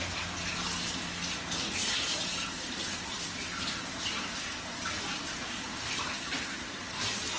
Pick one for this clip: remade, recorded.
recorded